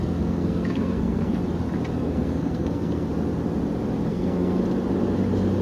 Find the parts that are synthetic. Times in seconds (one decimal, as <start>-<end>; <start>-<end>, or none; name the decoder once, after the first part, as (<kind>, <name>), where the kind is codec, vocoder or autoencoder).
0.0-1.4 (codec, SNAC); 2.0-3.1; 4.1-4.6